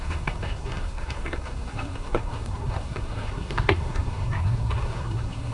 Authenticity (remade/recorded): remade